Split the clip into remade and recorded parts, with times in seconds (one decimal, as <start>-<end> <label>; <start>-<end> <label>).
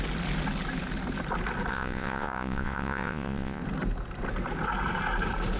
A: 0.0-1.7 recorded; 1.7-3.6 remade; 3.6-5.6 recorded